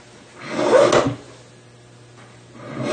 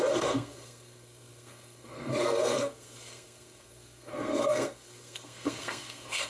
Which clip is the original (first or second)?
first